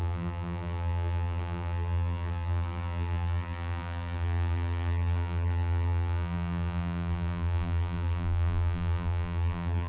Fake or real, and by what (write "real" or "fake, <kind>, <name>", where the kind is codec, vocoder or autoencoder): fake, vocoder, BigVGAN v2